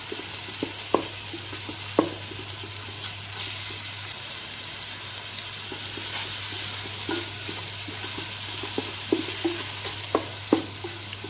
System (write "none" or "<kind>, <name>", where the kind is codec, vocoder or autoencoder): none